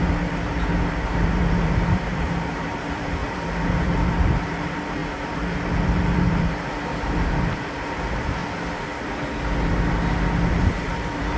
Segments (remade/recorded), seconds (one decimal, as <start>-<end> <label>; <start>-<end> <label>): 0.0-8.4 remade; 8.4-10.5 recorded; 10.5-11.4 remade